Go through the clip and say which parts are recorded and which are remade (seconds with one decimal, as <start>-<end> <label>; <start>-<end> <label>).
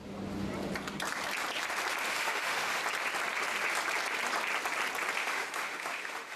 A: 0.0-2.1 recorded; 2.1-2.8 remade; 2.8-5.2 recorded; 5.2-6.4 remade